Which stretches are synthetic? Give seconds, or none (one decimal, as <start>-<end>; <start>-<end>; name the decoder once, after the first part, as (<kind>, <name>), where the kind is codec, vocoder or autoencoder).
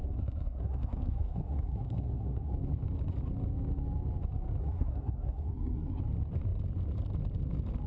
0.0-2.5 (codec, SNAC); 4.6-6.0